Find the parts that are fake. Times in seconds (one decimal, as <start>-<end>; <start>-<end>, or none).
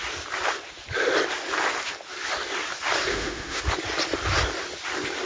3.1-3.6